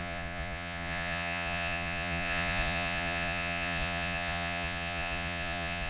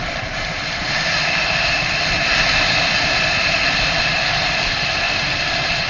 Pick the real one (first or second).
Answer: second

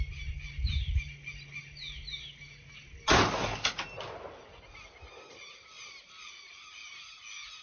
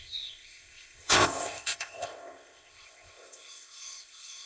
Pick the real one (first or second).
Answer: first